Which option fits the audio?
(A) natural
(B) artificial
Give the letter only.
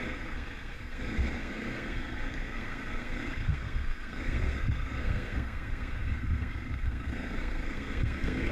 B